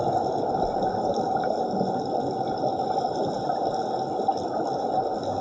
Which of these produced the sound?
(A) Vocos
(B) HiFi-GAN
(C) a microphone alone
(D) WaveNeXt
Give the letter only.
C